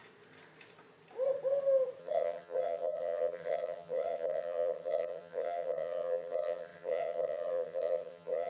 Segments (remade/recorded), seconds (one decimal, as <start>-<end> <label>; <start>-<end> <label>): 0.0-2.0 recorded; 2.0-8.5 remade